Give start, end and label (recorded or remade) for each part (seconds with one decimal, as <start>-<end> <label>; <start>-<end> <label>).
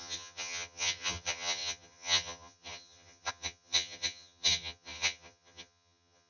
0.0-6.3 remade